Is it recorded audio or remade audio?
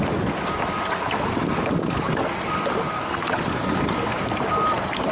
recorded